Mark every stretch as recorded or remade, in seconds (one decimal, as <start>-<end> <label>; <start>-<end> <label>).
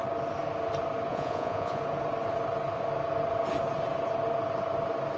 0.0-1.1 recorded; 1.1-1.8 remade; 1.8-5.2 recorded